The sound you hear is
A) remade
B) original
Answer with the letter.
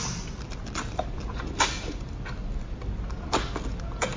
A